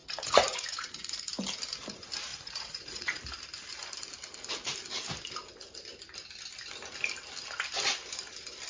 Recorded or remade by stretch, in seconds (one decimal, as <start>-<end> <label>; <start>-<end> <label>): 0.0-1.2 remade; 1.2-2.3 recorded; 2.3-3.2 remade; 3.2-8.7 recorded